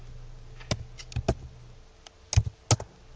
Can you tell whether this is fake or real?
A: real